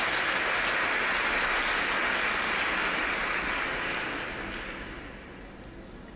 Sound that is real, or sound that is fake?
real